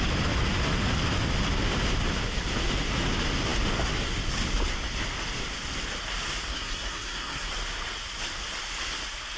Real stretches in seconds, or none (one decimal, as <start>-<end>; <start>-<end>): 0.0-6.5; 7.5-9.4